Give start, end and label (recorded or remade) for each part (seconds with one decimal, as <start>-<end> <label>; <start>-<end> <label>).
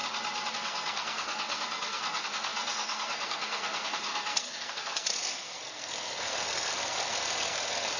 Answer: 0.0-0.5 recorded; 0.5-8.0 remade